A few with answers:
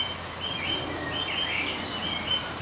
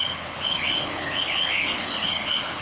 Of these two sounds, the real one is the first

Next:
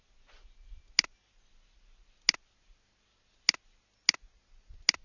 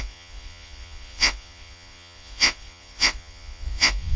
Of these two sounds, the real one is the first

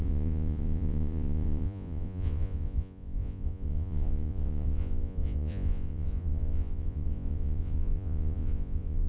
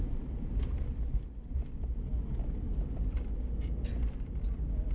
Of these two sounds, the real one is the second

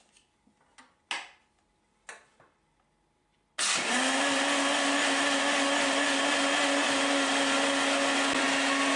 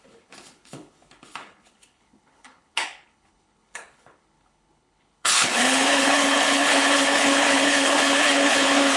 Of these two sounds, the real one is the first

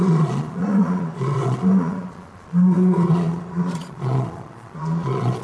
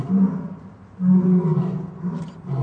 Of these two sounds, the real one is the second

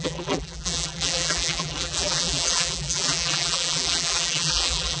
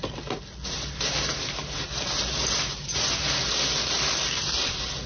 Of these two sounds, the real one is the second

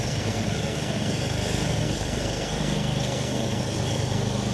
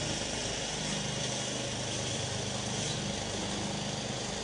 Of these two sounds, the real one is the second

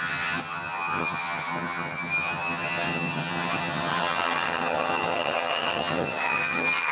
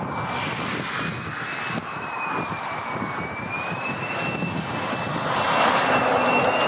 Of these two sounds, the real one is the second